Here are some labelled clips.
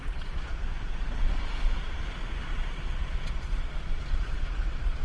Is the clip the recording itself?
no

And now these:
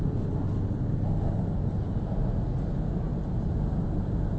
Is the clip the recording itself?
yes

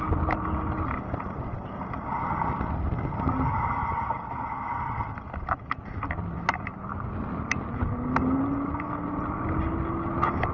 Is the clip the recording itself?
yes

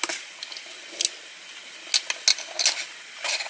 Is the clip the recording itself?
yes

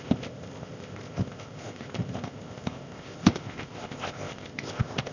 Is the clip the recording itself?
no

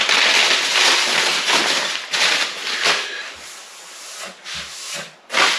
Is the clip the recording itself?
yes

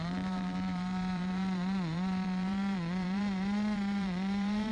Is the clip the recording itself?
no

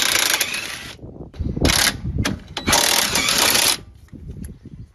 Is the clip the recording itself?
yes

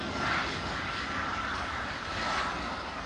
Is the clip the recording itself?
no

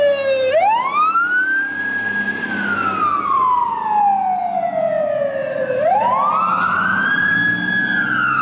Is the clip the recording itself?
yes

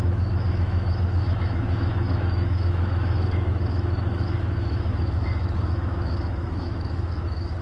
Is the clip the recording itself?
no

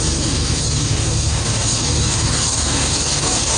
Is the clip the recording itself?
no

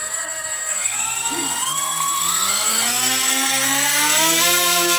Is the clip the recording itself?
no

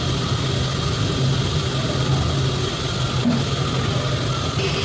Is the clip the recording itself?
yes